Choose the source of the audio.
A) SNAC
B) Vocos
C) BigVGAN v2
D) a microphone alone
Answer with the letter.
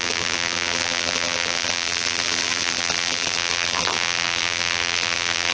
C